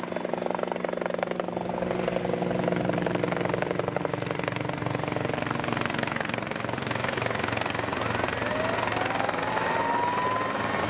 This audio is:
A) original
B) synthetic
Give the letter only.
A